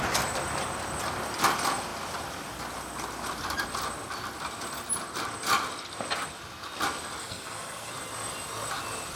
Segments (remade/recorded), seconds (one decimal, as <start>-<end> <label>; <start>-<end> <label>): 0.0-7.2 recorded; 7.2-7.9 remade; 7.9-9.2 recorded